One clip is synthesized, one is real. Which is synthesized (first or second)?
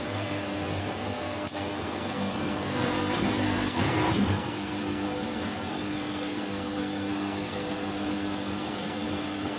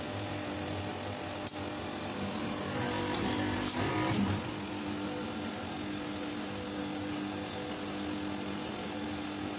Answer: first